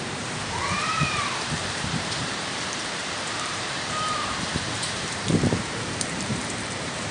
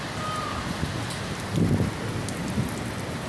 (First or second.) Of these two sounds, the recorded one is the second